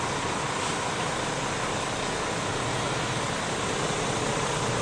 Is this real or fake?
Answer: real